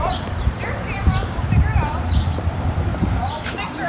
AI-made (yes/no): yes